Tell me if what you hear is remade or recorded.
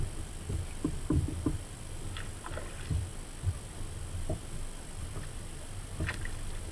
recorded